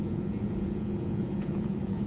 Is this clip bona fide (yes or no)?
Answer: no